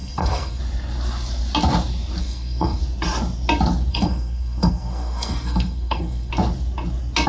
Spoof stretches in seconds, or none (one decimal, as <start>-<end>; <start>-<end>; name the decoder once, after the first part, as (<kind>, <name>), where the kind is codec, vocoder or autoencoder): 0.0-0.6 (codec, SNAC); 2.2-2.8; 3.9-6.3